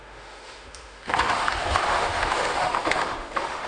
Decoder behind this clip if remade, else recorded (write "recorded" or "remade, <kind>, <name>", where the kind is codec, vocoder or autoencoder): remade, autoencoder, DAC-VAE